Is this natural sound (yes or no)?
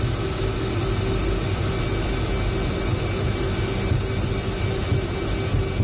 yes